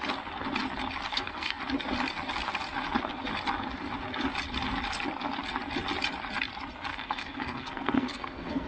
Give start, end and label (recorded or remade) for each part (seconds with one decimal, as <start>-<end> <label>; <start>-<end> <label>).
0.0-1.1 recorded; 1.1-1.6 remade; 1.6-6.9 recorded; 6.9-8.7 remade